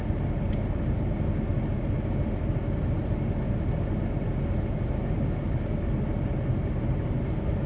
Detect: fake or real real